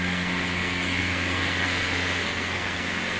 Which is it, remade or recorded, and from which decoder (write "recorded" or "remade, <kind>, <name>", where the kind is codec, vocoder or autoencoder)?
remade, codec, SNAC